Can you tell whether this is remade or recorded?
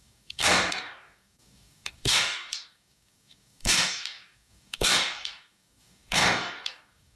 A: remade